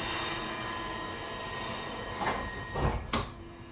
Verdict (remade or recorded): recorded